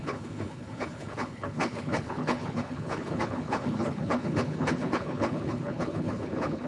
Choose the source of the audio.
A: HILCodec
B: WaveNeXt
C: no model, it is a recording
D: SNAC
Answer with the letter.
A